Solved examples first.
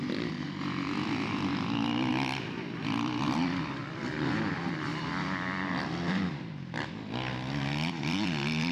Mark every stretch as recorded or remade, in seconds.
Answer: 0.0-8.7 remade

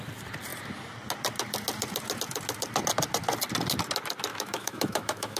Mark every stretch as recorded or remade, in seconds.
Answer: 0.0-4.3 recorded; 4.3-5.4 remade

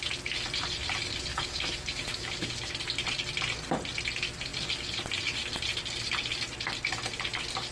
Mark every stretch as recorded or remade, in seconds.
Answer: 0.0-1.3 recorded; 1.3-2.7 remade; 2.7-7.7 recorded

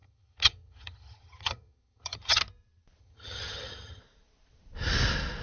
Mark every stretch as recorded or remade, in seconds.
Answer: 0.0-2.4 remade; 2.4-3.0 recorded; 3.0-4.0 remade; 4.0-5.4 recorded

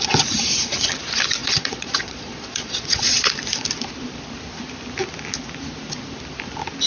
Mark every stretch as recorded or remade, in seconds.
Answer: 0.0-1.4 recorded; 1.4-3.3 remade; 3.3-6.9 recorded